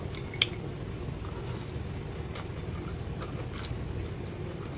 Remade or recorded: recorded